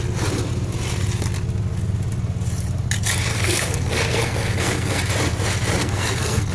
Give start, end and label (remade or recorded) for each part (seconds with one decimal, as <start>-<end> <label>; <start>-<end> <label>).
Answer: 0.0-3.3 recorded; 3.3-5.0 remade; 5.0-5.8 recorded; 5.8-6.5 remade